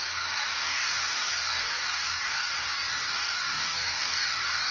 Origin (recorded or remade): remade